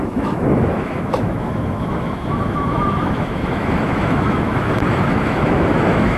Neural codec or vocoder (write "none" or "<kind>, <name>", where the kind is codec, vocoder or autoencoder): autoencoder, DAC-VAE